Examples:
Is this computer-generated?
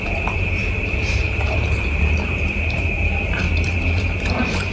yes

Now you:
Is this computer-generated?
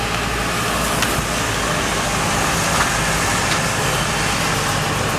no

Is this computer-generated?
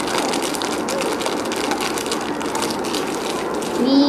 no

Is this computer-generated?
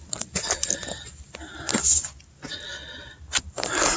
no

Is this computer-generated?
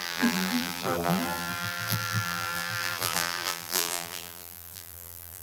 yes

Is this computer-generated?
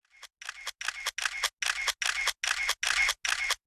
no